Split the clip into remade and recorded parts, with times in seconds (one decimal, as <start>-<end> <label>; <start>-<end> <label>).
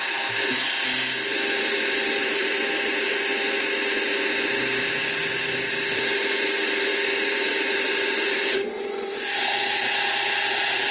0.0-2.2 recorded; 2.2-3.1 remade; 3.1-6.9 recorded; 6.9-10.9 remade